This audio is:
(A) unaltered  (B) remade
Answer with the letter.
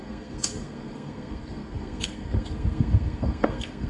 B